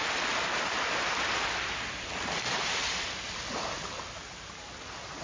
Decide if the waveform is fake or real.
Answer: real